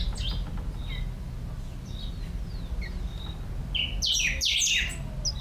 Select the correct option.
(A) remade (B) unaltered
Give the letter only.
B